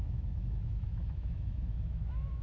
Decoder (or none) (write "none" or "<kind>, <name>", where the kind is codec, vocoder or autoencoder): autoencoder, DAC-VAE